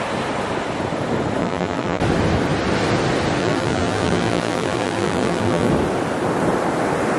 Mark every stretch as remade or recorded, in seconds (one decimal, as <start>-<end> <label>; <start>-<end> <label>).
0.0-1.4 recorded; 1.4-2.0 remade; 2.0-3.4 recorded; 3.4-5.7 remade; 5.7-7.2 recorded

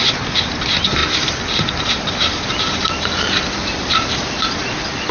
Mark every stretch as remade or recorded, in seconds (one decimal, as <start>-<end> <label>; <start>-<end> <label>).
0.0-3.6 recorded; 3.6-4.6 remade; 4.6-5.1 recorded

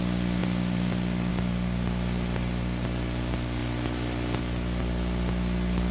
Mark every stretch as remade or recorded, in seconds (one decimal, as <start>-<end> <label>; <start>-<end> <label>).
0.0-0.4 recorded; 0.4-1.3 remade; 1.3-3.6 recorded; 3.6-4.4 remade; 4.4-5.9 recorded